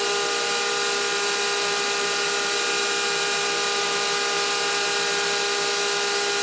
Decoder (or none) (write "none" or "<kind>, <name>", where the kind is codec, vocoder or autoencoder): none